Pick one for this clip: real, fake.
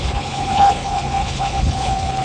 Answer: fake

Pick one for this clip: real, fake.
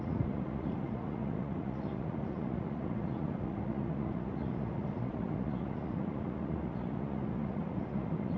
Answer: fake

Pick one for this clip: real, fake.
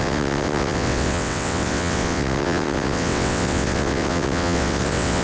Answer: fake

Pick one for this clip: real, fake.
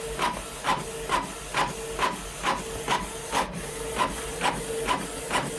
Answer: real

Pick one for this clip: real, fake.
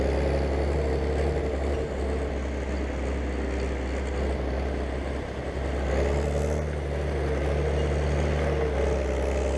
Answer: real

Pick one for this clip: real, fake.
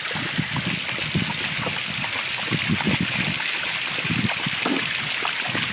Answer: real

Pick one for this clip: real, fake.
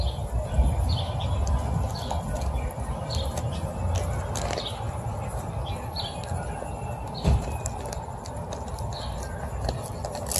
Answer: real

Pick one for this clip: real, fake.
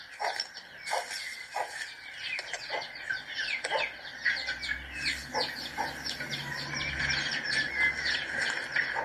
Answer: real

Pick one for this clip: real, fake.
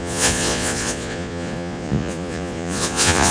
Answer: fake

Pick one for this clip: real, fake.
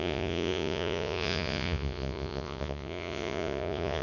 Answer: fake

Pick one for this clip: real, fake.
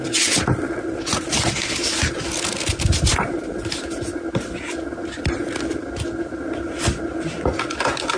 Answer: real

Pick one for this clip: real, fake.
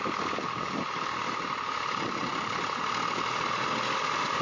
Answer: real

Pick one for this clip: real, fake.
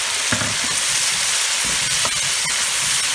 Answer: real